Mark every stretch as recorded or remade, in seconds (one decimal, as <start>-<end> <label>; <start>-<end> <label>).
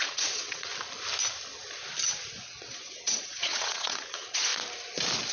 0.0-0.7 remade; 0.7-2.3 recorded; 2.3-4.5 remade; 4.5-5.3 recorded